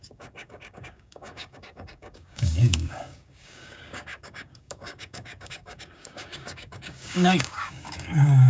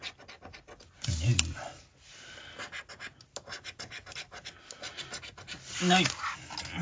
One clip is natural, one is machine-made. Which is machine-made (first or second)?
first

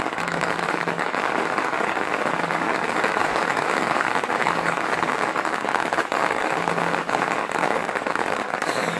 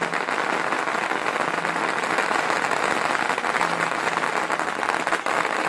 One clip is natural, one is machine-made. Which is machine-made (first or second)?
first